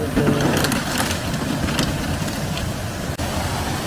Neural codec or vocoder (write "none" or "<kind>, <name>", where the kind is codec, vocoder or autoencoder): none